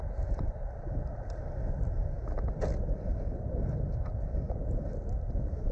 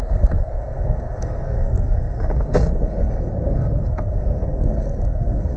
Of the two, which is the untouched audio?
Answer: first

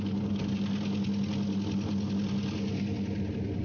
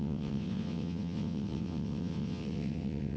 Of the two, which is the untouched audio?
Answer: first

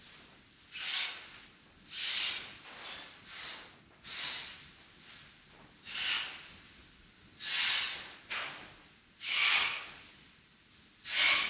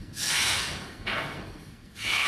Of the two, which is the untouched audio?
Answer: first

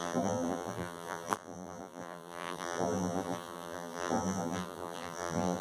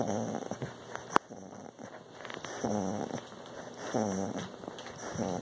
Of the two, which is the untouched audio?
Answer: second